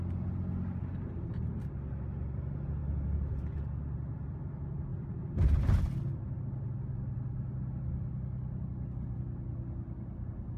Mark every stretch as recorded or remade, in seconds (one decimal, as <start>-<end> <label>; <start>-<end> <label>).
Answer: 0.0-4.9 recorded; 4.9-6.4 remade; 6.4-10.6 recorded